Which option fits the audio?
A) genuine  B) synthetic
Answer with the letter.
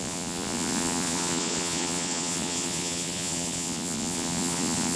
B